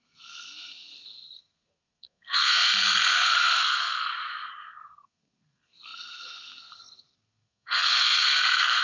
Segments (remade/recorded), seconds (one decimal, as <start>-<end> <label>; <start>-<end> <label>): 0.0-4.1 remade; 4.1-4.6 recorded; 4.6-8.8 remade